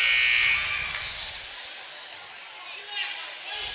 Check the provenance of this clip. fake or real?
real